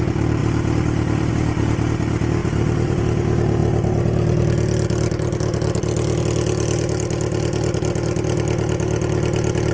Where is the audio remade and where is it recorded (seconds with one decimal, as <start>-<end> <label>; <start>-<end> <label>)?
0.0-0.4 recorded; 0.4-1.3 remade; 1.3-2.4 recorded; 2.4-3.0 remade; 3.0-9.7 recorded